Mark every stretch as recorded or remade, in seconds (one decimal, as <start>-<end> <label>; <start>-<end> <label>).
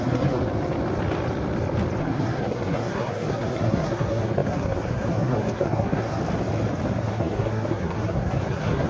0.0-0.4 remade; 0.4-2.0 recorded; 2.0-6.2 remade; 6.2-7.0 recorded; 7.0-8.9 remade